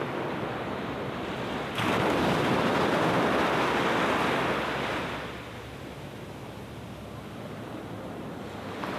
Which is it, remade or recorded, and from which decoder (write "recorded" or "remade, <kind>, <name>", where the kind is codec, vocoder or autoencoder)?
recorded